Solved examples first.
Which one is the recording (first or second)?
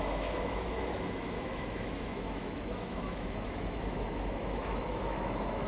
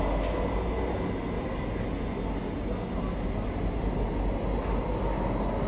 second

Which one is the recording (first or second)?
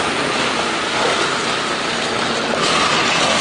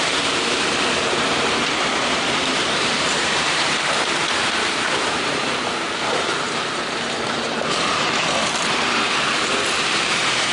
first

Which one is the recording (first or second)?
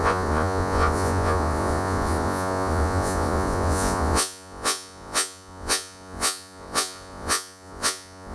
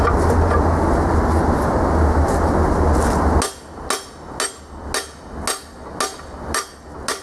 second